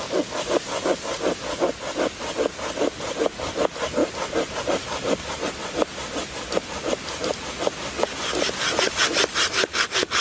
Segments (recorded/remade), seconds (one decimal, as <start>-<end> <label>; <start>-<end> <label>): 0.0-4.0 recorded; 4.0-5.5 remade; 5.5-10.2 recorded

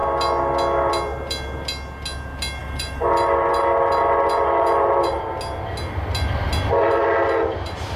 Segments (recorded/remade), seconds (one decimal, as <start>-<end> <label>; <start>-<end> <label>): 0.0-2.6 recorded; 2.6-5.2 remade; 5.2-8.0 recorded

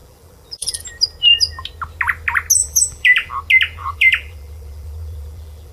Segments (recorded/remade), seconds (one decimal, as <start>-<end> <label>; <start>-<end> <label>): 0.0-0.8 remade; 0.8-2.6 recorded; 2.6-3.3 remade; 3.3-3.8 recorded; 3.8-5.7 remade